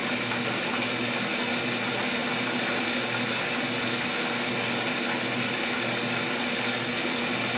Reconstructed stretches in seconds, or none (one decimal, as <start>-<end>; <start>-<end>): none